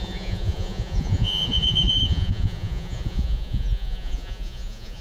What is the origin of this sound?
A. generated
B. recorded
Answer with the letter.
A